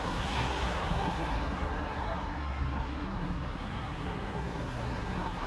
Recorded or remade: remade